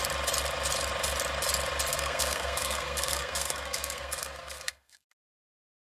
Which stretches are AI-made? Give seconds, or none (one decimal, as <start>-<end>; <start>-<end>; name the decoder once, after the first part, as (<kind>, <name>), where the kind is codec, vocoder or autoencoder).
1.9-5.4 (codec, SNAC)